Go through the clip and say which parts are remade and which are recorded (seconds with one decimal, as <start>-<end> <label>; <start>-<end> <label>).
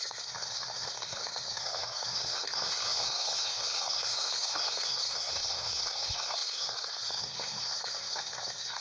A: 0.0-8.8 remade